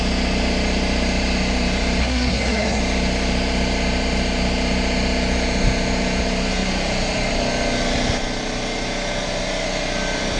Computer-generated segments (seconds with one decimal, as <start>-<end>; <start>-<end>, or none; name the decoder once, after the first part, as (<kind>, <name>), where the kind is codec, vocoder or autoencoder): 2.0-2.8 (codec, SNAC)